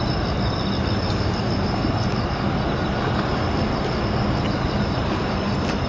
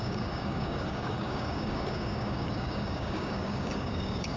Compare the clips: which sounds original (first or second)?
first